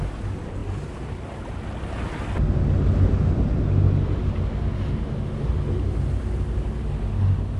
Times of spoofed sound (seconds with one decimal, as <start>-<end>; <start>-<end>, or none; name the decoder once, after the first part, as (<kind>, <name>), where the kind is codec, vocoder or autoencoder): none